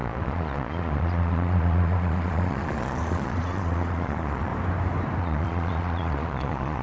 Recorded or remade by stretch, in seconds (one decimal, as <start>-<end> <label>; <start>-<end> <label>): 0.0-4.5 remade; 4.5-5.2 recorded; 5.2-6.8 remade